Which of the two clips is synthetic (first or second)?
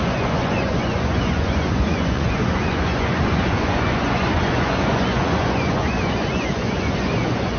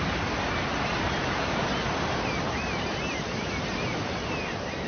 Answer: first